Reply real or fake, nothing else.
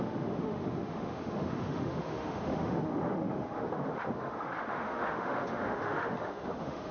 fake